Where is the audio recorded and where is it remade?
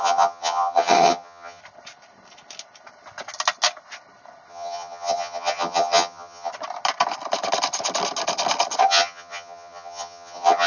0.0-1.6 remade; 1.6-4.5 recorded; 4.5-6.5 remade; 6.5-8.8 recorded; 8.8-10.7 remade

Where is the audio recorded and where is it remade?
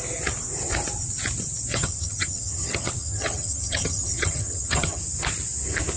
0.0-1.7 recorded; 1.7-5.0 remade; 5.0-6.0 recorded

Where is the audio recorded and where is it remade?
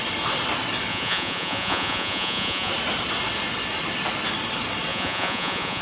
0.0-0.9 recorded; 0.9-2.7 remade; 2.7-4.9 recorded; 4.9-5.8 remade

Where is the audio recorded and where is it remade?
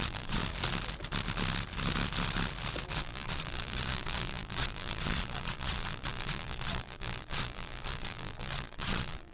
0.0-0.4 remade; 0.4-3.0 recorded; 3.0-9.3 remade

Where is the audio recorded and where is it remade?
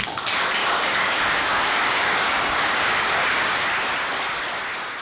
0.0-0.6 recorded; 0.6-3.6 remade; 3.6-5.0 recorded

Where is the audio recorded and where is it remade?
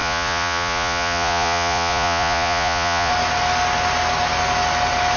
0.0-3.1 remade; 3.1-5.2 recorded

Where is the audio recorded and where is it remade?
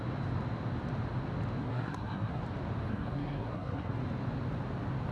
0.0-1.6 recorded; 1.6-2.4 remade; 2.4-2.9 recorded; 2.9-4.0 remade; 4.0-5.1 recorded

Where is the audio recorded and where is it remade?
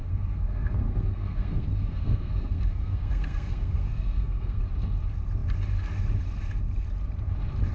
0.0-4.6 remade; 4.6-7.7 recorded